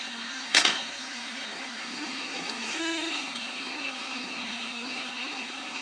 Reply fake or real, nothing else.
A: fake